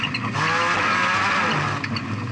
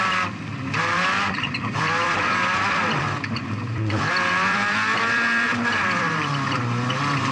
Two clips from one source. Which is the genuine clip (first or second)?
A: first